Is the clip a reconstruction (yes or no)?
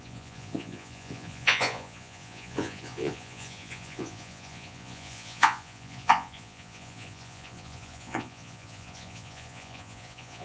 yes